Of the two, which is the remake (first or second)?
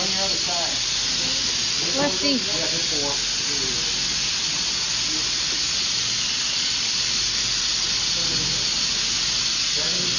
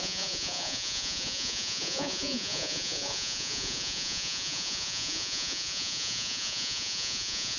second